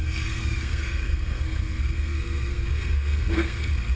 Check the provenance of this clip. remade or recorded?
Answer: remade